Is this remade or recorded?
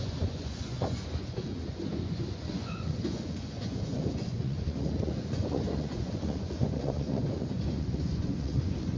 remade